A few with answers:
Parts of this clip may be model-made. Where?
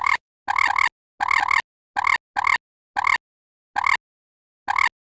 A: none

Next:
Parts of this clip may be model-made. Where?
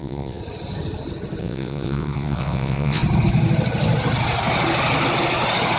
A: 0.0-0.4 (vocoder, WaveNeXt); 1.4-3.0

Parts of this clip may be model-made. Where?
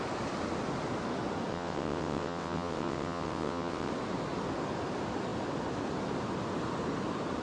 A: 1.5-3.9 (vocoder, WaveNeXt)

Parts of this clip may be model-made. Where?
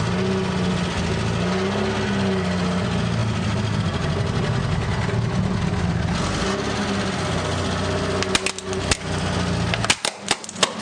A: none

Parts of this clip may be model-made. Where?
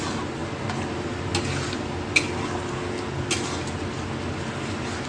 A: none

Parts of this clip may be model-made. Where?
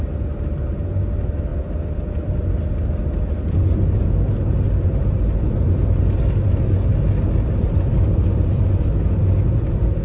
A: none